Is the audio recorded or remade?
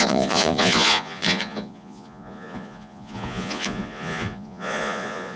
remade